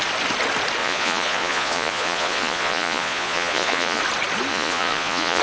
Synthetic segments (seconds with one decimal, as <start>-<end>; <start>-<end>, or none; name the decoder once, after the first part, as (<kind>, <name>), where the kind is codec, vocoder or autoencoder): 0.8-4.0 (vocoder, Vocos); 4.5-5.4